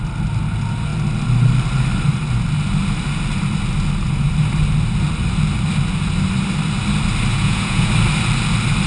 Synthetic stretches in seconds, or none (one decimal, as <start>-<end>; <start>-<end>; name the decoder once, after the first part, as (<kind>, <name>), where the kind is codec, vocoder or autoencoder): 7.3-7.9 (vocoder, Vocos)